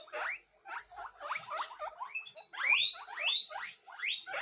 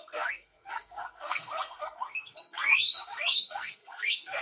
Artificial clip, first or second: second